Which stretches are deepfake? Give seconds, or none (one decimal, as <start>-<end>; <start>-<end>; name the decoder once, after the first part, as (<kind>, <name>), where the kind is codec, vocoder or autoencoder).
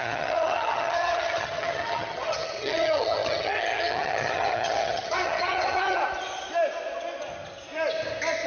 0.0-6.0 (vocoder, HiFi-GAN)